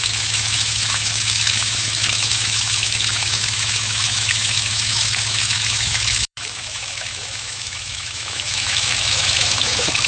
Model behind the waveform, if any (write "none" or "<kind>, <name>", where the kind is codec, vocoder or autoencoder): autoencoder, DAC-VAE